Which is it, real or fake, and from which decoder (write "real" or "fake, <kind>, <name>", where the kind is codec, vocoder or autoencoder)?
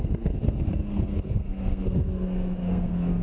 fake, codec, SNAC